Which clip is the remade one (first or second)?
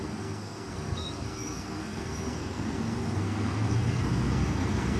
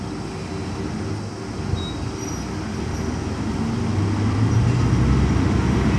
first